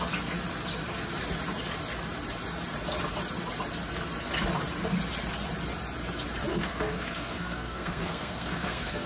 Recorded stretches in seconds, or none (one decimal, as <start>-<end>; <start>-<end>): 0.0-6.5